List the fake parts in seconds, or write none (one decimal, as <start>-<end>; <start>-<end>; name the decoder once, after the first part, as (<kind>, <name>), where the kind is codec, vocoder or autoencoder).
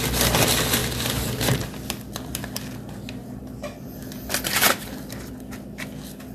0.8-1.5 (vocoder, BigVGAN v2); 3.2-5.3